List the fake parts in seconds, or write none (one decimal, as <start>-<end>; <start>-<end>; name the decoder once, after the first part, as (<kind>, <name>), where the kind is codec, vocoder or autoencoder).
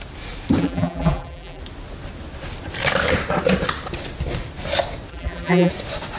0.6-1.6 (vocoder, BigVGAN v2); 5.1-5.7